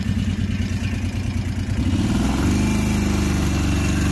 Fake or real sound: real